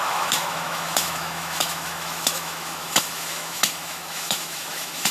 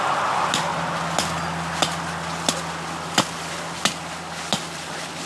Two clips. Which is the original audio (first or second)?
second